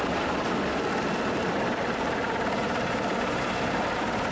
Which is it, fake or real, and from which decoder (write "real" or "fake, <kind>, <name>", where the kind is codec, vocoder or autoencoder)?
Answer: fake, vocoder, BigVGAN v2